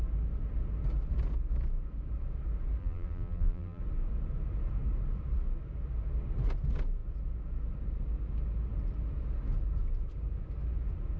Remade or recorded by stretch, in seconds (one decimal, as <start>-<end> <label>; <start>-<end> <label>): 0.0-2.8 recorded; 2.8-3.8 remade; 3.8-11.2 recorded